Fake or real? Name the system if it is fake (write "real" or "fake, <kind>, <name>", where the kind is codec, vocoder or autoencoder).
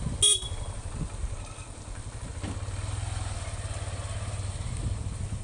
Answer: real